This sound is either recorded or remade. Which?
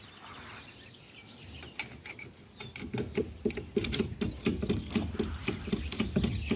recorded